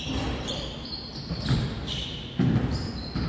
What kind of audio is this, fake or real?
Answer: real